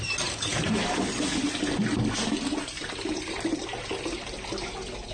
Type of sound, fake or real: real